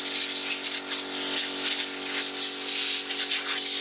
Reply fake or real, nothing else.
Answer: real